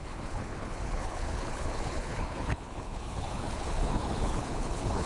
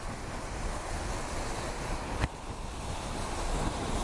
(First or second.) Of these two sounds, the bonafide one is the second